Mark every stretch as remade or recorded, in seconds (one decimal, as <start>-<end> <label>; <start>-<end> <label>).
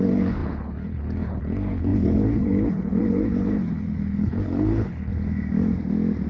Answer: 0.0-5.1 remade; 5.1-6.3 recorded